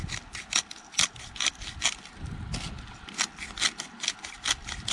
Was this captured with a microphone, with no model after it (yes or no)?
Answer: yes